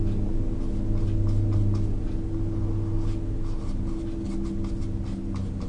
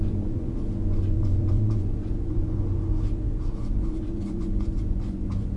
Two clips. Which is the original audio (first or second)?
first